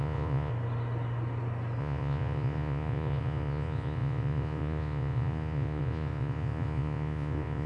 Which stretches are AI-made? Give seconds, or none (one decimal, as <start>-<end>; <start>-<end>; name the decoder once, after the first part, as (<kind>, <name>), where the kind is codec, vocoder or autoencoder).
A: 0.0-0.5 (vocoder, Vocos); 1.8-7.7